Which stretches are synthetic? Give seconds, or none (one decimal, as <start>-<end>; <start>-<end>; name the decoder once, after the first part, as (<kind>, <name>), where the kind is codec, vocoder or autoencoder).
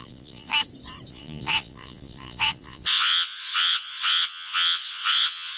0.0-0.5 (vocoder, Vocos); 1.1-5.6